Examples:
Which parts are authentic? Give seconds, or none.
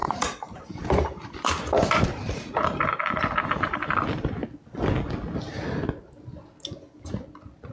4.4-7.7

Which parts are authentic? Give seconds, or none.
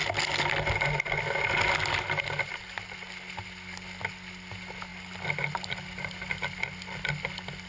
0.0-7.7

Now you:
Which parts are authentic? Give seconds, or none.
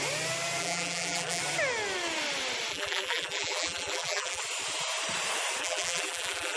0.0-0.6; 1.4-2.7; 4.4-5.6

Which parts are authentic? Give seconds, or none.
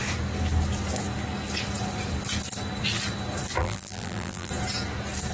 0.0-3.6; 4.5-5.3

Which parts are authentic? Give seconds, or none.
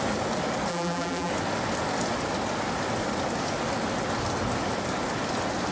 0.0-0.7; 1.3-5.7